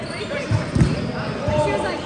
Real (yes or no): yes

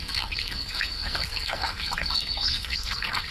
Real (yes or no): no